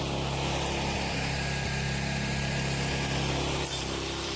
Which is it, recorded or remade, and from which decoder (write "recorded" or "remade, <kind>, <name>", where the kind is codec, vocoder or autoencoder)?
remade, vocoder, BigVGAN v2